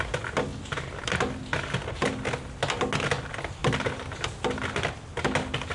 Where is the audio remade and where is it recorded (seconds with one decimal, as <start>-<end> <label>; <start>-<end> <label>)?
0.0-0.5 recorded; 0.5-2.8 remade; 2.8-3.6 recorded; 3.6-4.4 remade; 4.4-5.7 recorded